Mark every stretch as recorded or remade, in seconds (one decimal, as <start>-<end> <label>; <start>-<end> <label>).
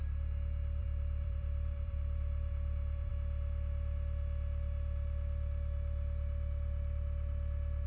0.0-0.8 recorded; 0.8-3.1 remade; 3.1-7.9 recorded